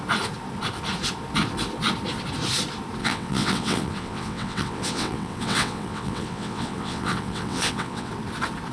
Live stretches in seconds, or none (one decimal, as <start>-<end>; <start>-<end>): 0.0-3.0; 8.1-8.7